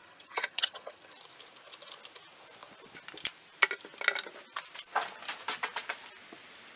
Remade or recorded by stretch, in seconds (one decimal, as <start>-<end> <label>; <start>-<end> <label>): 0.0-1.1 remade; 1.1-6.8 recorded